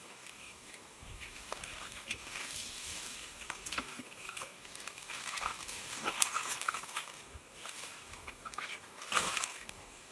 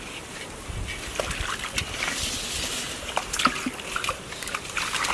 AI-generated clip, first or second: first